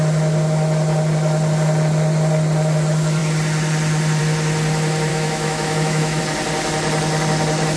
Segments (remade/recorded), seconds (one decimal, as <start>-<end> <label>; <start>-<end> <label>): 0.0-5.1 recorded; 5.1-6.2 remade; 6.2-7.8 recorded